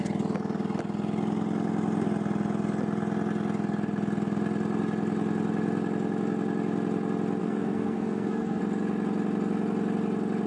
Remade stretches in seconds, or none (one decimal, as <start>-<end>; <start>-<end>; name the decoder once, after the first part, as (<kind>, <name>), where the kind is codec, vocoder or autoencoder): 7.4-8.6 (codec, SNAC)